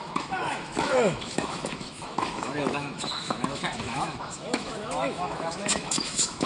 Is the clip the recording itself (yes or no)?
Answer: no